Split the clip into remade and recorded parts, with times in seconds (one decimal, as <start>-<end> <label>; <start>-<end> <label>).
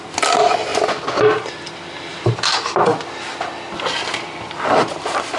0.0-5.4 recorded